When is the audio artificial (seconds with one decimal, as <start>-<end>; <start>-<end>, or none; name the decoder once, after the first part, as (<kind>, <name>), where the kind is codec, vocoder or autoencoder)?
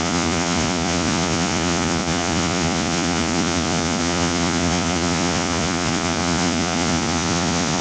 0.0-7.8 (vocoder, Vocos)